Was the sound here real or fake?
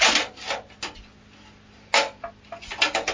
real